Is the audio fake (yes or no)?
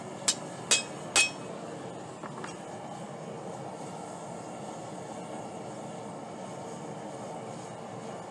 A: no